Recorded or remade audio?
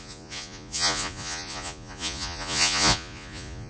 remade